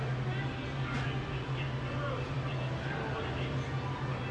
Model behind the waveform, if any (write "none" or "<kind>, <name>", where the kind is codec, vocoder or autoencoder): none